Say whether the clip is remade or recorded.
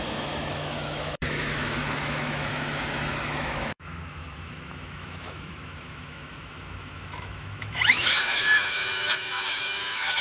remade